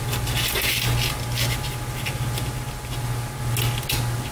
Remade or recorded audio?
recorded